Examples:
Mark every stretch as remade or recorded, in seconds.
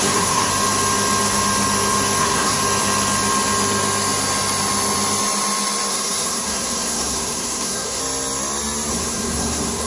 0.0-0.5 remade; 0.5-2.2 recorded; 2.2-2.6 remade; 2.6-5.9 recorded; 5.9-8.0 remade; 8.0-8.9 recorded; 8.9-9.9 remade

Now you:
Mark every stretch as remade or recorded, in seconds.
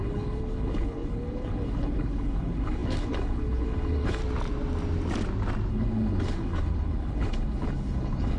0.0-4.2 remade; 4.2-5.7 recorded; 5.7-8.4 remade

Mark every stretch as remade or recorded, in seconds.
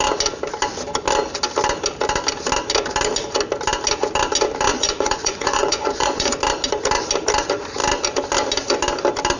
0.0-4.7 recorded; 4.7-6.4 remade; 6.4-9.4 recorded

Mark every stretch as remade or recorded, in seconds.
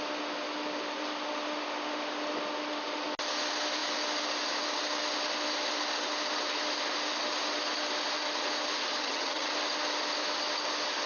0.0-9.0 recorded; 9.0-9.5 remade; 9.5-11.1 recorded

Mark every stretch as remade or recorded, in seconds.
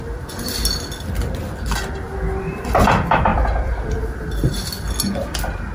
0.0-3.3 recorded; 3.3-4.9 remade; 4.9-5.7 recorded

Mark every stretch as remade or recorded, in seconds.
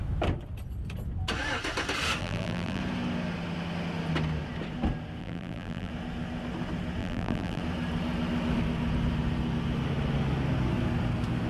0.0-2.2 recorded; 2.2-2.8 remade; 2.8-5.2 recorded; 5.2-5.9 remade; 5.9-7.0 recorded; 7.0-7.6 remade; 7.6-11.5 recorded